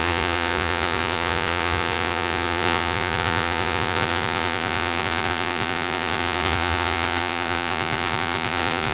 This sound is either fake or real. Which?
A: fake